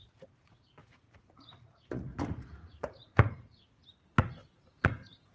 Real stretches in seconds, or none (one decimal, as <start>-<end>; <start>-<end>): 3.8-4.6